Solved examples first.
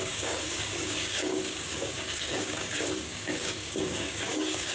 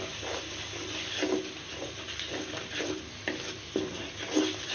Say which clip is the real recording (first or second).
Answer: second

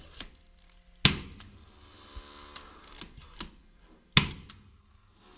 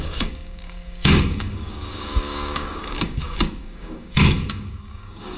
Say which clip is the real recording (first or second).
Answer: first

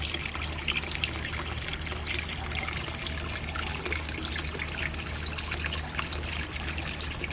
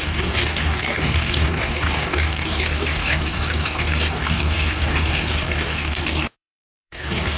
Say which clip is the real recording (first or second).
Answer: first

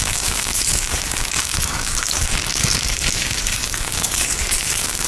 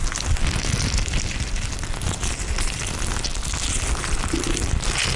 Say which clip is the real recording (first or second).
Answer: second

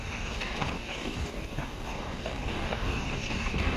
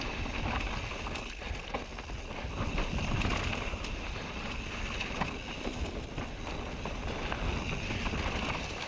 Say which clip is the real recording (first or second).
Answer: second